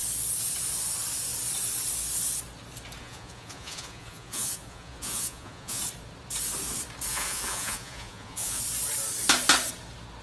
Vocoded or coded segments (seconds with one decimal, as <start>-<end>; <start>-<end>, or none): 3.0-5.8; 7.1-8.6